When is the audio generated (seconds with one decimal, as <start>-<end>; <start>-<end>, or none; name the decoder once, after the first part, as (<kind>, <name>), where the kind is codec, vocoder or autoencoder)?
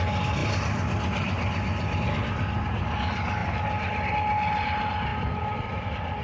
none